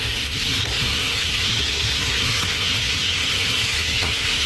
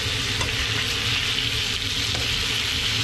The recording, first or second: second